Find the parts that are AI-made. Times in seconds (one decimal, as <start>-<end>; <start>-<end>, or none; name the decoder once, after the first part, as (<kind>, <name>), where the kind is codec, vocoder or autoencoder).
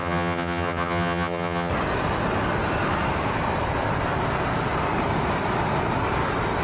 0.0-1.7 (vocoder, HiFi-GAN)